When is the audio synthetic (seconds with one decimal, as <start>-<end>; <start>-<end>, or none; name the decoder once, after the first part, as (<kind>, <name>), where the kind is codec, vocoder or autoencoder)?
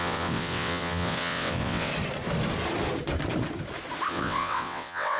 0.0-1.9 (vocoder, WaveNeXt); 4.1-5.2